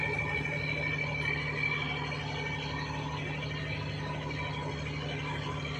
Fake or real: real